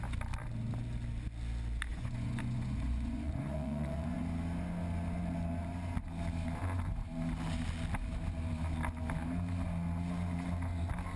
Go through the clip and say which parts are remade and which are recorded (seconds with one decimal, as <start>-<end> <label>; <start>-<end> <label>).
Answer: 0.0-1.9 recorded; 1.9-4.2 remade; 4.2-11.2 recorded